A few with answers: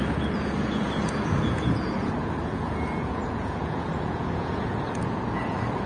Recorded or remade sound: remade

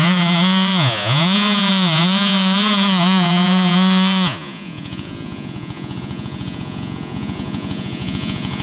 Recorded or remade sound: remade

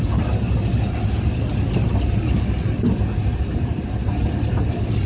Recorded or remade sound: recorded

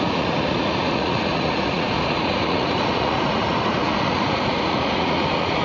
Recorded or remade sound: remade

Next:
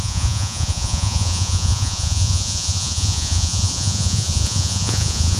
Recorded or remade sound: remade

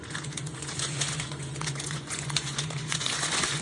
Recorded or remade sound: remade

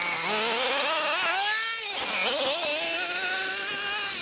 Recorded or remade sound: recorded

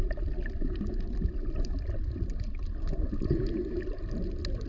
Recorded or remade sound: recorded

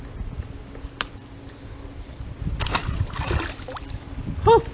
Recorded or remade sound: recorded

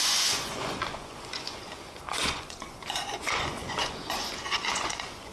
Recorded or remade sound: remade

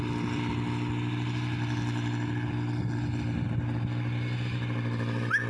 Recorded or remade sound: recorded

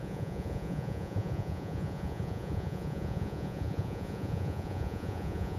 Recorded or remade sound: remade